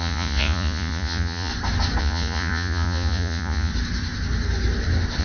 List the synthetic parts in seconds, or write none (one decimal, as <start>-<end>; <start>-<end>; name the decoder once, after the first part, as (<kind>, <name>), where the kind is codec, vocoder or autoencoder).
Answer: 0.0-1.5 (vocoder, Vocos); 2.0-3.7